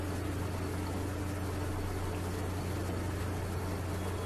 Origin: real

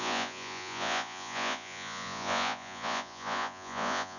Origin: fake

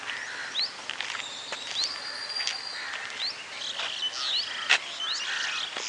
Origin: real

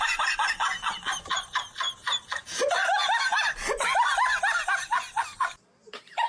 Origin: real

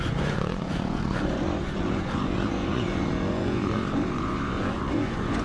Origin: fake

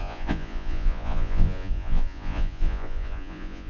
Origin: fake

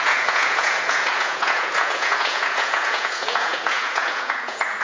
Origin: fake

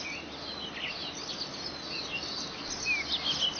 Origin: real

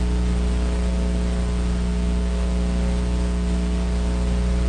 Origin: real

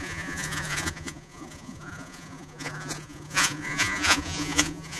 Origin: fake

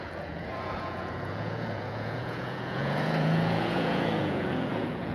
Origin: fake